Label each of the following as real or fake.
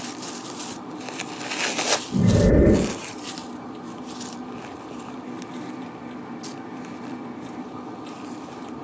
real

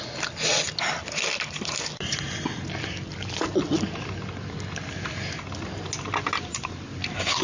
real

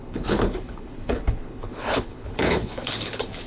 fake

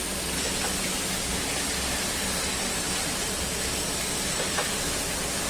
real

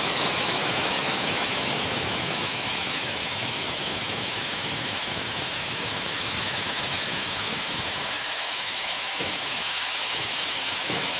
fake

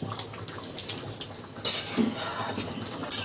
real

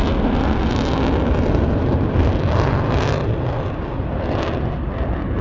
real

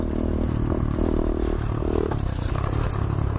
real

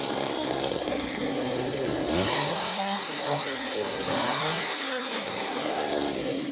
fake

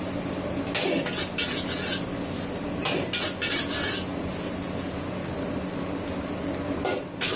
real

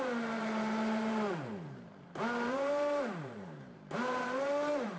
fake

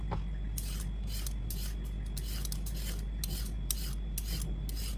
real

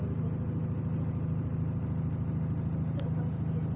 real